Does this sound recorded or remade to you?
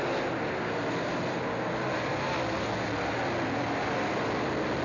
recorded